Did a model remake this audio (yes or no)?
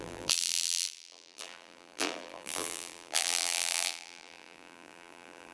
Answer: yes